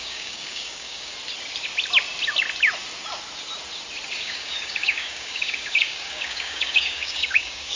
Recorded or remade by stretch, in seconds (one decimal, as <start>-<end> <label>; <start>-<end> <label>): 0.0-1.1 remade; 1.1-4.2 recorded; 4.2-7.8 remade